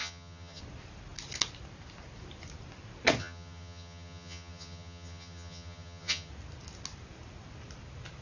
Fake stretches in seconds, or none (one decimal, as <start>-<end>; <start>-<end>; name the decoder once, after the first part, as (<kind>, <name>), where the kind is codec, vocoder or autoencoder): 0.0-0.6 (vocoder, HiFi-GAN); 3.2-6.3

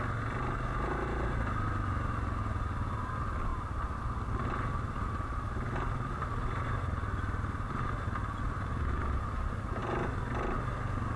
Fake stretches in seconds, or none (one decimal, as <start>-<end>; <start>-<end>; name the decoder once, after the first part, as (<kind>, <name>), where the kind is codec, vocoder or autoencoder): none

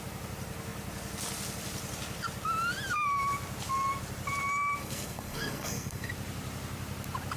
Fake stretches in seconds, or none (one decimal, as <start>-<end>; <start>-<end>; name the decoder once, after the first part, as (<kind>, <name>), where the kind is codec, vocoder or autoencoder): 4.8-6.1 (codec, SNAC)

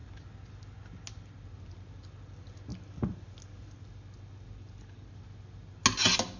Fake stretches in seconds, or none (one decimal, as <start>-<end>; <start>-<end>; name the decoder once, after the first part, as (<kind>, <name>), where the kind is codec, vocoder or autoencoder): none